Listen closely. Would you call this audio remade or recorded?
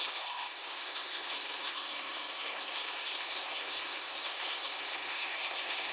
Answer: remade